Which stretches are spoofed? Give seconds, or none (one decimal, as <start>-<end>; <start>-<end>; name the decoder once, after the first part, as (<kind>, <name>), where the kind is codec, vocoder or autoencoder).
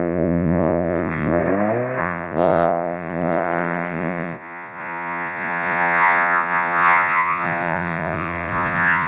0.0-1.4 (vocoder, Vocos); 2.0-9.1